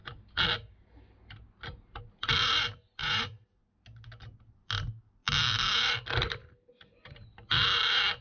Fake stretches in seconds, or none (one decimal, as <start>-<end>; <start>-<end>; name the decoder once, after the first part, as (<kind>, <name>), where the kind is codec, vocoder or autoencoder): 3.0-3.6 (vocoder, Vocos)